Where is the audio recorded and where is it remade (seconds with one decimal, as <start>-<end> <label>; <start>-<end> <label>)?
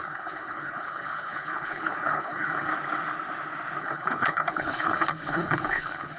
0.0-2.7 remade; 2.7-3.8 recorded; 3.8-6.2 remade